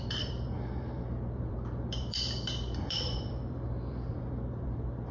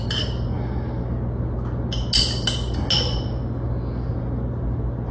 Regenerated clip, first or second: first